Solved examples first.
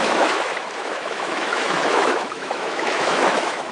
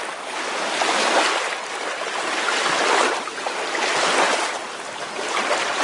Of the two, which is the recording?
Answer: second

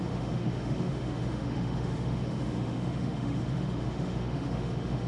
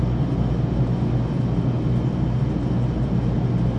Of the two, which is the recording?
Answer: second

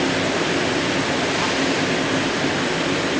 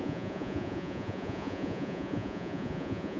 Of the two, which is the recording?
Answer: first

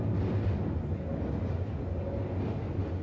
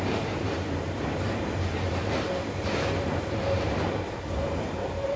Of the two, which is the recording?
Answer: first